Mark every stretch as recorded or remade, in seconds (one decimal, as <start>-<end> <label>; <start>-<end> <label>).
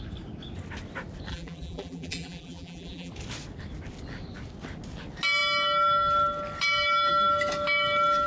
0.0-1.3 recorded; 1.3-3.1 remade; 3.1-8.3 recorded